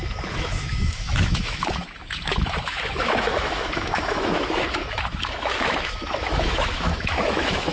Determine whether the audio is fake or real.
fake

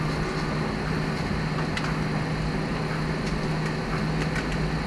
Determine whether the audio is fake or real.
real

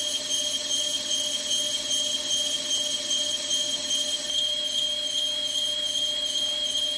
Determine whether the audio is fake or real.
real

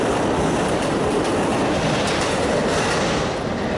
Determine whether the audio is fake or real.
real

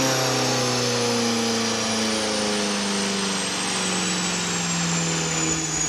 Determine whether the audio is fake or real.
real